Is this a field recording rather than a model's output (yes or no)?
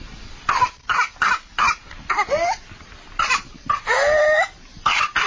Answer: yes